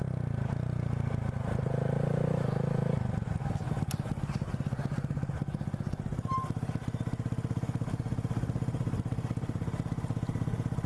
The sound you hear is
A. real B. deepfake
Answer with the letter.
A